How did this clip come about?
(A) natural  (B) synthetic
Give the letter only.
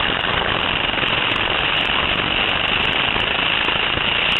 A